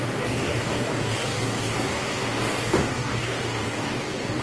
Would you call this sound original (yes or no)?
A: no